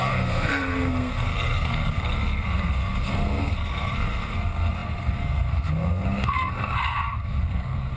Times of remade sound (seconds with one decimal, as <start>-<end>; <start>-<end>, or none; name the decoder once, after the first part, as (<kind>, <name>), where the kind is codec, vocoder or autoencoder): 0.0-8.0 (codec, SNAC)